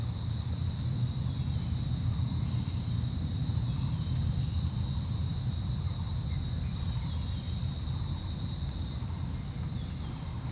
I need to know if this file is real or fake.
real